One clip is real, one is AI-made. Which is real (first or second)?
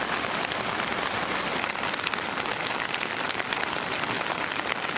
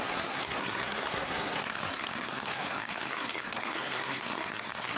first